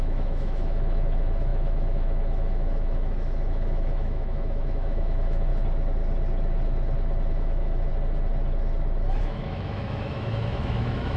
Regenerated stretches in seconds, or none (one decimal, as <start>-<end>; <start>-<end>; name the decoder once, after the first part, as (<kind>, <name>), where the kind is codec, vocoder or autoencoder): 0.0-5.5 (autoencoder, DAC-VAE); 7.3-7.9; 9.2-11.2